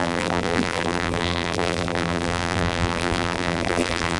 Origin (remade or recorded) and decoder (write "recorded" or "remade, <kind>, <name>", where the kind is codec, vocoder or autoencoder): remade, vocoder, BigVGAN v2